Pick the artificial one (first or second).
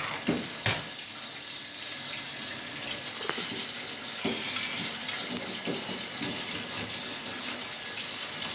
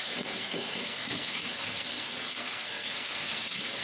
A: second